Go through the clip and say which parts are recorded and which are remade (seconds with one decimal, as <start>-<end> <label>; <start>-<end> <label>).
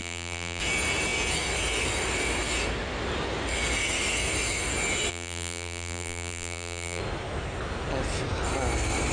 0.0-0.6 remade; 0.6-5.1 recorded; 5.1-7.0 remade; 7.0-9.1 recorded